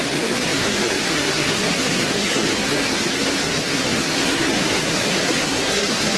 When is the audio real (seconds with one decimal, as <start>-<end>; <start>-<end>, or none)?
none